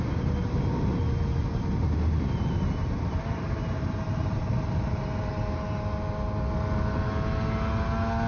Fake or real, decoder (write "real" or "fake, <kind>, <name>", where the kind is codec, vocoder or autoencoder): real